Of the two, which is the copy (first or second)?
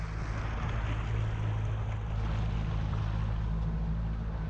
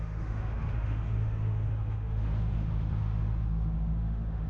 second